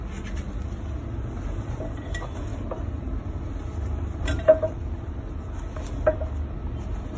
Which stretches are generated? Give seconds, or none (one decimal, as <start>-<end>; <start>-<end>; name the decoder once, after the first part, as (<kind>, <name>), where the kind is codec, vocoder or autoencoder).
2.5-5.6 (vocoder, BigVGAN v2)